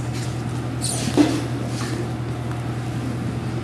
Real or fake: real